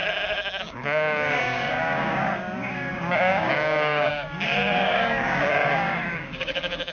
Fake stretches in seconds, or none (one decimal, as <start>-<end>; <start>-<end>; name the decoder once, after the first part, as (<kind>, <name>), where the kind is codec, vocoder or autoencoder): 0.6-6.9 (codec, DAC)